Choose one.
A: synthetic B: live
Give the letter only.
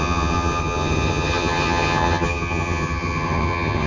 A